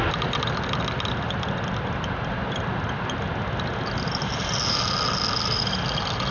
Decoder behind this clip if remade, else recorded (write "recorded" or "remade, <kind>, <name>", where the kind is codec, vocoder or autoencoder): recorded